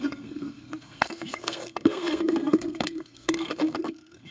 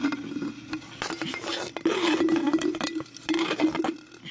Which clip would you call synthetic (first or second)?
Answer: first